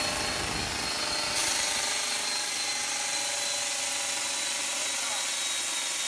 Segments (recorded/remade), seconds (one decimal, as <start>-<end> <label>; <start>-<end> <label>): 0.0-6.1 recorded